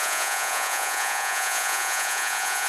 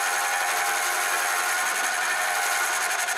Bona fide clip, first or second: second